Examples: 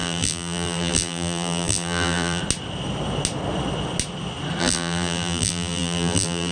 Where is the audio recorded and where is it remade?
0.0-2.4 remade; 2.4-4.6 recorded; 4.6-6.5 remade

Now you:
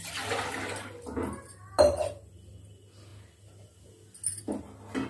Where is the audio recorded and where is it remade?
0.0-5.1 recorded

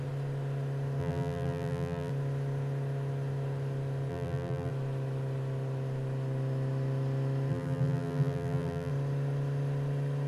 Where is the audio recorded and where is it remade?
0.0-1.0 recorded; 1.0-2.1 remade; 2.1-4.1 recorded; 4.1-4.7 remade; 4.7-7.5 recorded; 7.5-8.9 remade; 8.9-10.3 recorded

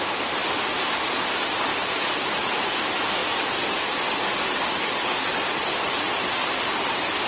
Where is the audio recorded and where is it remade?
0.0-1.7 remade; 1.7-2.6 recorded; 2.6-7.3 remade